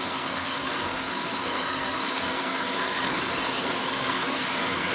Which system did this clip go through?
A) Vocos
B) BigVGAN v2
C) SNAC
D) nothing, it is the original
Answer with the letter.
C